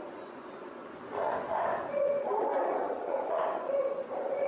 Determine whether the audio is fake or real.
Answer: fake